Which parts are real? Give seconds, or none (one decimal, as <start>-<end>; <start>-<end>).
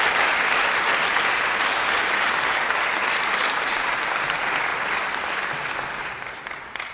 0.0-6.9